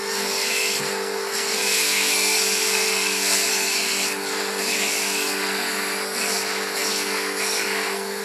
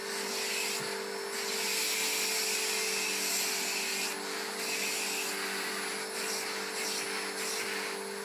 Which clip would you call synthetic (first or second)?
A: first